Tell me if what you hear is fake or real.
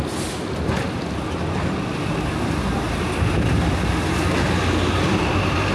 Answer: real